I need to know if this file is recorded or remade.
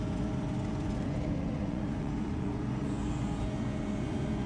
remade